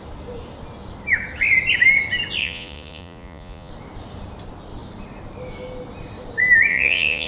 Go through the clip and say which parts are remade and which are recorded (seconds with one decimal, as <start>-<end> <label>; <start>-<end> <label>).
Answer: 0.0-2.4 recorded; 2.4-3.7 remade; 3.7-6.7 recorded; 6.7-7.3 remade